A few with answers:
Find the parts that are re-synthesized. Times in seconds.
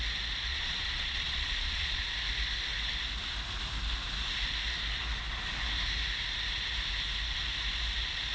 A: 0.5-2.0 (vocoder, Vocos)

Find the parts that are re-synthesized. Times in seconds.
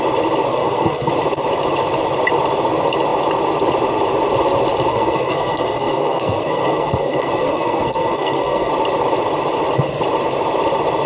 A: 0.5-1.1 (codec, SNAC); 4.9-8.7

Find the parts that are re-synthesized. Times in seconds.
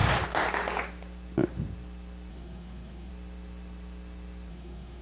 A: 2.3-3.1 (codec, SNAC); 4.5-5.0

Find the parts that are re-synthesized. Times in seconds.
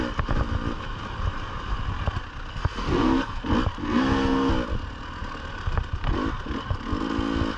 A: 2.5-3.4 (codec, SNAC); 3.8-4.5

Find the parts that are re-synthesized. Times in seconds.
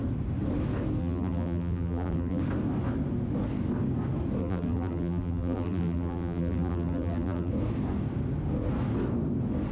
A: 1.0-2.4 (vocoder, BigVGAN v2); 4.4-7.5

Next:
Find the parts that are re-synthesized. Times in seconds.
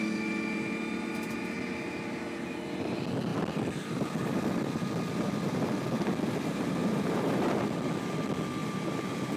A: 3.3-5.6 (vocoder, BigVGAN v2); 6.8-8.0; 8.6-9.4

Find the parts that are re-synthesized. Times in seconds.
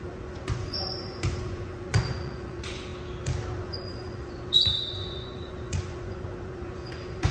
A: 0.0-2.9 (vocoder, Vocos); 3.6-7.3